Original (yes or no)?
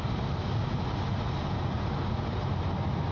yes